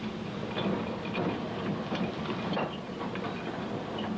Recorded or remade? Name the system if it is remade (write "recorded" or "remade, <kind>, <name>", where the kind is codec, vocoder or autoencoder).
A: recorded